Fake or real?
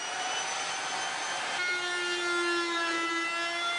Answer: real